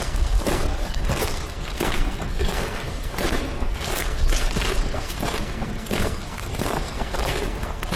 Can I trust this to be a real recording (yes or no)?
no